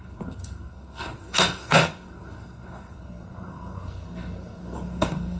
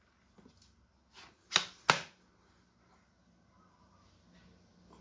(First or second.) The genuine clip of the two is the second